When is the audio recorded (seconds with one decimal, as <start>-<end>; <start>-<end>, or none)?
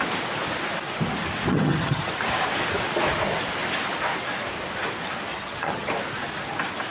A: 0.0-1.5; 2.1-5.3; 5.9-6.9